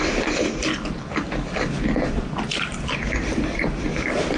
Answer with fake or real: fake